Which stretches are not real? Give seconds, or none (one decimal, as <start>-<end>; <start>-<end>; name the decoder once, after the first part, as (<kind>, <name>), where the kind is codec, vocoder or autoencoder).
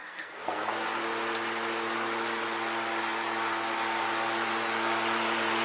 0.0-0.7 (codec, SNAC)